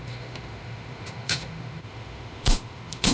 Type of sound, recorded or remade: remade